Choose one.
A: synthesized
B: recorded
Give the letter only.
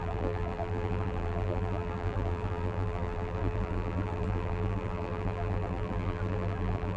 A